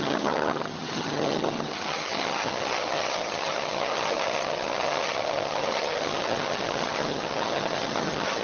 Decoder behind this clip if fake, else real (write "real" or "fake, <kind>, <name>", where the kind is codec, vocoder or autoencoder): fake, vocoder, HiFi-GAN